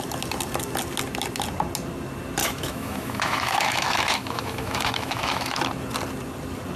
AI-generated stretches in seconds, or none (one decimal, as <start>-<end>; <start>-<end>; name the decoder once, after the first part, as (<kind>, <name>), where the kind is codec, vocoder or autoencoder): 2.4-5.6 (autoencoder, DAC-VAE)